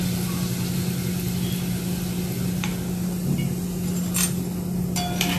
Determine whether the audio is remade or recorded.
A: recorded